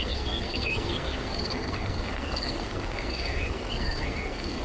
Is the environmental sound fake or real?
fake